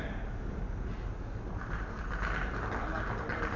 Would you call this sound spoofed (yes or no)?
no